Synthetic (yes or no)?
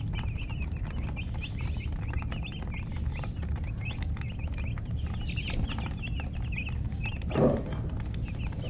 no